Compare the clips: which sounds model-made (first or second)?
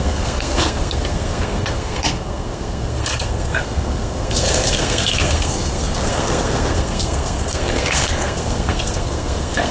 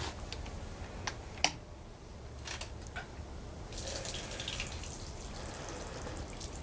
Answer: first